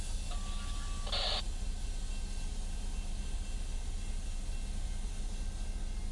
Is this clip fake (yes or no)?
no